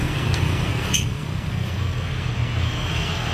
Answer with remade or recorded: remade